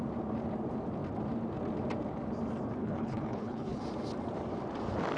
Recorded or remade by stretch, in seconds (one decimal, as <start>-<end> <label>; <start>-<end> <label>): 0.0-2.8 recorded; 2.8-3.8 remade; 3.8-5.2 recorded